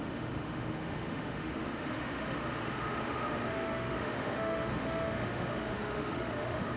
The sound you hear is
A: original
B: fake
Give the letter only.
B